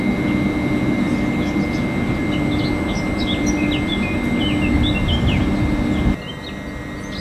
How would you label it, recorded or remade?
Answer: recorded